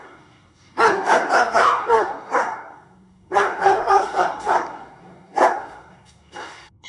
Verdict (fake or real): fake